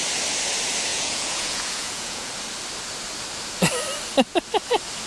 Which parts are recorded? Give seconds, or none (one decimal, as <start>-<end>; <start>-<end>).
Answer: 0.0-0.9; 2.3-5.1